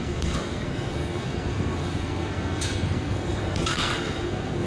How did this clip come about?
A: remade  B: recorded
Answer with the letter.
A